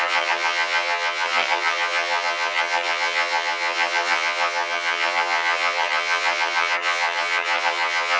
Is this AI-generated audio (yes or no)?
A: yes